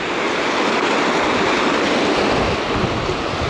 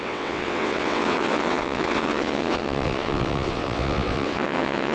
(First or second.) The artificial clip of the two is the second